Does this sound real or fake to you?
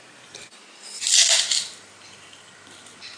real